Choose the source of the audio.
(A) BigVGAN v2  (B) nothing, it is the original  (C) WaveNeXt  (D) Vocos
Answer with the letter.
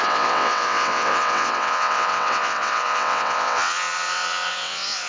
C